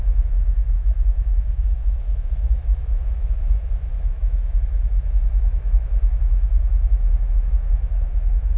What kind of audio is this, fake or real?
fake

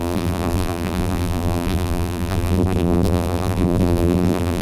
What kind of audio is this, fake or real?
fake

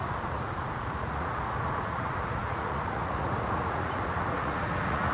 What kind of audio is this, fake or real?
fake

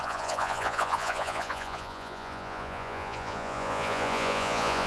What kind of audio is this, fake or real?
fake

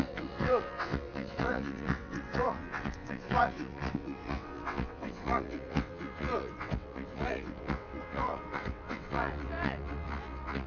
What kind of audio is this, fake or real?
fake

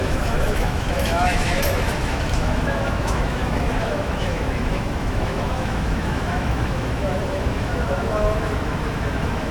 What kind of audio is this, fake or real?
fake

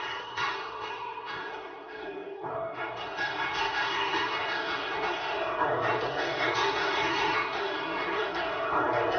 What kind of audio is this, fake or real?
fake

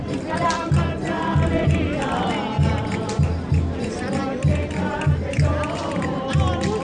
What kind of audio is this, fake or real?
real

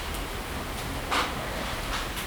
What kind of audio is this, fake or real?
real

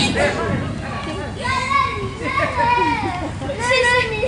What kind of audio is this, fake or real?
real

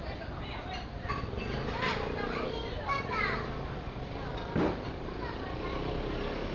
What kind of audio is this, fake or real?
real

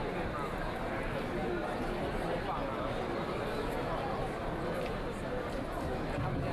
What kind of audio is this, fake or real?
real